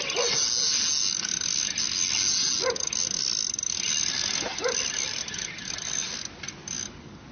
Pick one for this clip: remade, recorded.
recorded